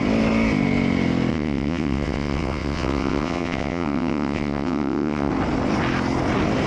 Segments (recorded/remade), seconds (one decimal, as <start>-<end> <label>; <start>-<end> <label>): 0.0-1.3 recorded; 1.3-5.3 remade; 5.3-6.7 recorded